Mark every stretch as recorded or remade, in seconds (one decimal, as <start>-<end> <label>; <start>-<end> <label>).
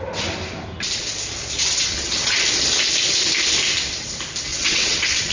0.0-1.6 recorded; 1.6-2.4 remade; 2.4-4.5 recorded; 4.5-5.3 remade